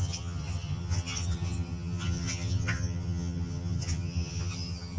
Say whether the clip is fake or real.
fake